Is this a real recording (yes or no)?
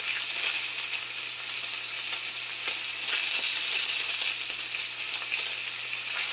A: yes